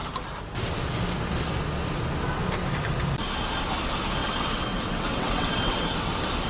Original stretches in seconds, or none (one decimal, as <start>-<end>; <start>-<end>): 0.0-4.2; 6.1-6.5